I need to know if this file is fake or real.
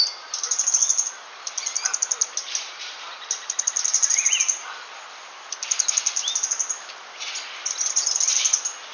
real